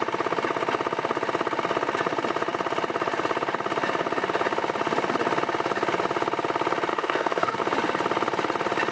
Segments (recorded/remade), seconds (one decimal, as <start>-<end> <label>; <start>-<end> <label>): 0.0-6.9 recorded; 6.9-7.6 remade; 7.6-8.9 recorded